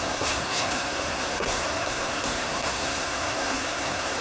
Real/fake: fake